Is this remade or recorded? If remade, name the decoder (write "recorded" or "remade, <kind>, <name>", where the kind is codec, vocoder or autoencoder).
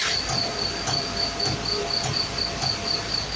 recorded